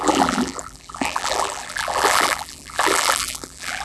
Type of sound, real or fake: fake